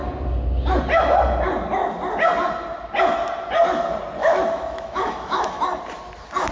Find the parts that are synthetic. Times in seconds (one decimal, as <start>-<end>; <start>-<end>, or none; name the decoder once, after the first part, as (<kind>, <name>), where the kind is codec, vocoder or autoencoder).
4.2-5.6 (autoencoder, DAC-VAE)